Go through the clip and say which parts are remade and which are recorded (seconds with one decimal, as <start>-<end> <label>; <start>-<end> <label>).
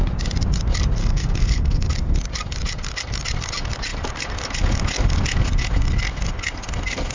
0.0-1.0 recorded; 1.0-1.9 remade; 1.9-7.1 recorded